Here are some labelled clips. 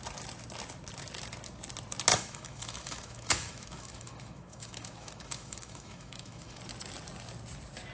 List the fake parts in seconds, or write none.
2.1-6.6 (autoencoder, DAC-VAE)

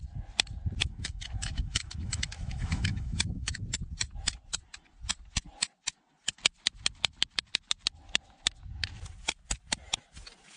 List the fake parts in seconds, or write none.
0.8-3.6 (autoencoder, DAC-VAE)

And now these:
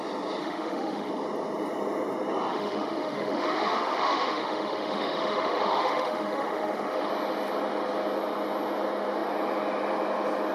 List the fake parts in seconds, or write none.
0.4-1.1 (autoencoder, DAC-VAE); 2.5-7.1

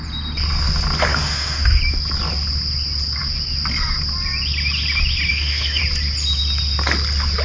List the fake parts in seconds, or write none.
1.1-1.8 (autoencoder, DAC-VAE); 5.3-5.8

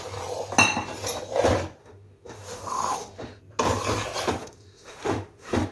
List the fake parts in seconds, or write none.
1.8-3.4 (autoencoder, DAC-VAE); 4.4-5.7

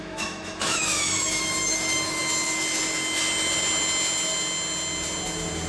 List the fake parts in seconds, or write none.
0.0-2.2 (autoencoder, DAC-VAE)